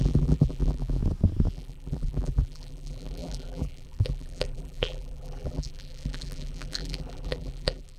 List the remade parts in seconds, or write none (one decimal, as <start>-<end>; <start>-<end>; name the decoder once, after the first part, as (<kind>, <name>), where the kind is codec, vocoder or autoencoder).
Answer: 0.0-1.0 (vocoder, BigVGAN v2); 1.5-8.0